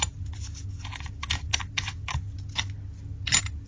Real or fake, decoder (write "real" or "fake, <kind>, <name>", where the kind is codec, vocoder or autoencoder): real